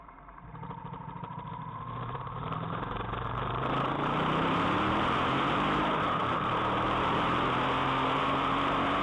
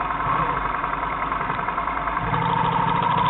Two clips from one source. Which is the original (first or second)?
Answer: second